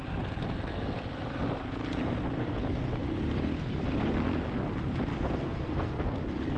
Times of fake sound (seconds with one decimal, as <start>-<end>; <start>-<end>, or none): 5.1-6.1